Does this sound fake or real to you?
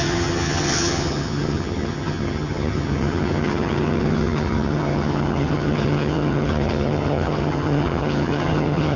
fake